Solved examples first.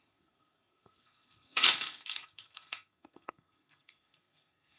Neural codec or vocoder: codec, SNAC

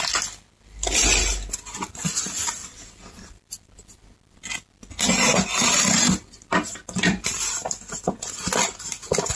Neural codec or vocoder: none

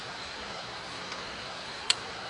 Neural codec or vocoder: codec, SNAC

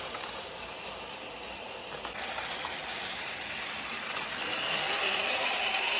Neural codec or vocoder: none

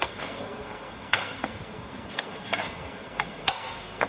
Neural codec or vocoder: codec, SNAC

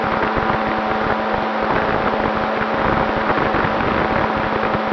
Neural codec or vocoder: none